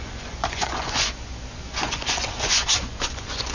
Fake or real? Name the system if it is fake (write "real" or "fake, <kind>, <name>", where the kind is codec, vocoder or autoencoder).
fake, vocoder, Vocos